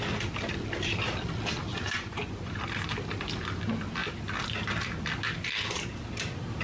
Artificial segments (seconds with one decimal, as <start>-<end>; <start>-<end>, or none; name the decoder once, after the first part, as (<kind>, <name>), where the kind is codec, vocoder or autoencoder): 1.7-2.5 (vocoder, Vocos)